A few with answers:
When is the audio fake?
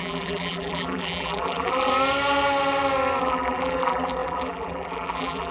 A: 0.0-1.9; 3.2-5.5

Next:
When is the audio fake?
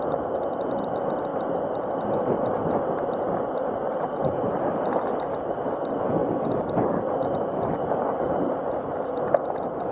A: none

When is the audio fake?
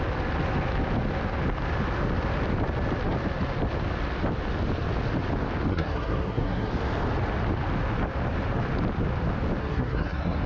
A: 5.7-6.7; 9.6-10.5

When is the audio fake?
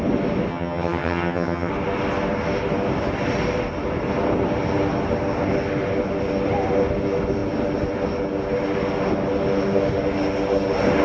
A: 0.5-1.7